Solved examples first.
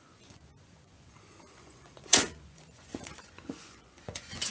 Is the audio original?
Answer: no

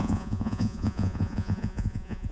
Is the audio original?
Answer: no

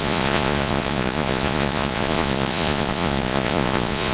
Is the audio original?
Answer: no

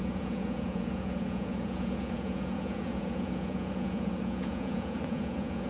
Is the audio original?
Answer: no